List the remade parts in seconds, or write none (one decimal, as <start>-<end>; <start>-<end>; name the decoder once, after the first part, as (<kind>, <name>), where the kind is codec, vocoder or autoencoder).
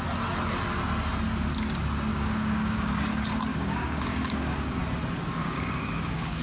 2.1-3.0 (codec, DAC); 3.5-4.8; 5.4-6.4